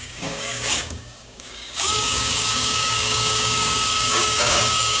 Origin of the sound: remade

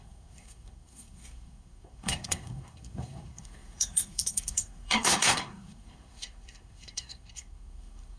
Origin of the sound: remade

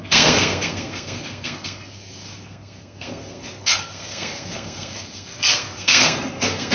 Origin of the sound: remade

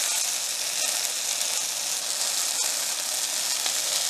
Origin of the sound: recorded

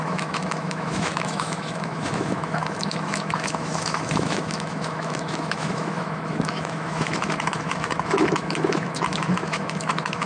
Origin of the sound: remade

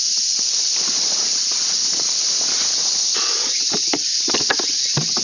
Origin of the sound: recorded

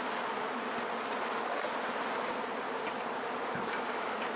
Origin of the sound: recorded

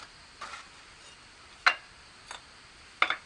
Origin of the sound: recorded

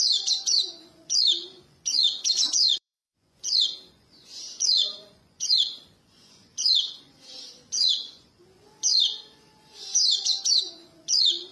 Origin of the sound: remade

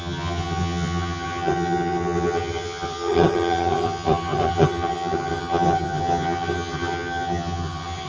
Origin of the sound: remade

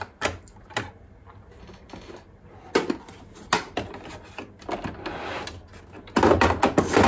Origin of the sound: recorded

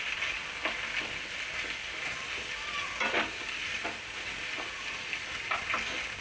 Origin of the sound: recorded